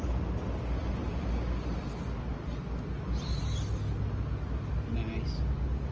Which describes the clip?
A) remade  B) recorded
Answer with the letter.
B